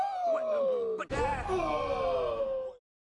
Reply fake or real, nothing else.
real